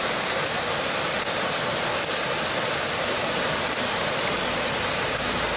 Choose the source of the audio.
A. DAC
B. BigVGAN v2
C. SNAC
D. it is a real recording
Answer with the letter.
D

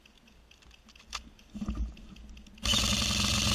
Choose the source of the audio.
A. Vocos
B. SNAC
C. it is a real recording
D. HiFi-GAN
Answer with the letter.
C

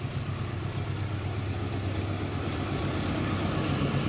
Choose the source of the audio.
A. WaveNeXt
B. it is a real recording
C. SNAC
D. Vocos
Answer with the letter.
B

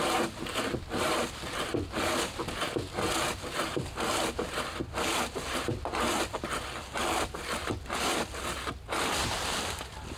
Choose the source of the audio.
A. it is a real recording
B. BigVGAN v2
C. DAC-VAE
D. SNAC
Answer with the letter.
B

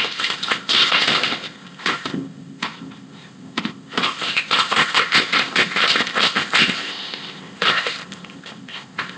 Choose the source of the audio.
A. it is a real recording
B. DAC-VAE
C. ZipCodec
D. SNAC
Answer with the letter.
C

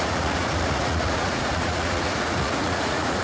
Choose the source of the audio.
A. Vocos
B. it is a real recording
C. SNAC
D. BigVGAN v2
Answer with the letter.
A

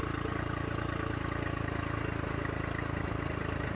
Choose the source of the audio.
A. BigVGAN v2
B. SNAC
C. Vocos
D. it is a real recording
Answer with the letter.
D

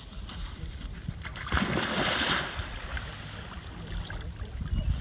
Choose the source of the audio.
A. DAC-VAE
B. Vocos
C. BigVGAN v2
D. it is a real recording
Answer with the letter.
D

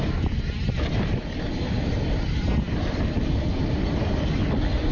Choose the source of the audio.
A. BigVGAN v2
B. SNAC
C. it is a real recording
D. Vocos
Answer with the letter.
A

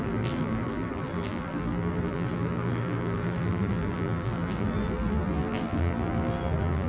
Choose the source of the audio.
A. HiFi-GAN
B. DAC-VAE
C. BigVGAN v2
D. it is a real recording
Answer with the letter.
C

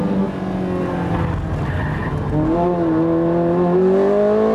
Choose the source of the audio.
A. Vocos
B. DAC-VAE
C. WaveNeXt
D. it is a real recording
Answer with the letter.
D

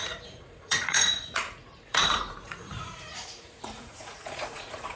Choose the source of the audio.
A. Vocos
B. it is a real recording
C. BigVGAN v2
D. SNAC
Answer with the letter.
A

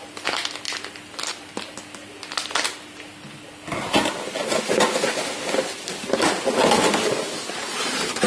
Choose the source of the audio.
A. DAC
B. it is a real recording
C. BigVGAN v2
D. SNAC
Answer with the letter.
B